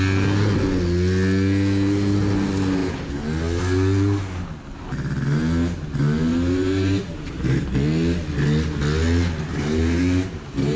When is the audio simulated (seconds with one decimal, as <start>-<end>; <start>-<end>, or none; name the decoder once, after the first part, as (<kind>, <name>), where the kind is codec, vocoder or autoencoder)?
6.3-7.7 (vocoder, BigVGAN v2); 9.5-10.8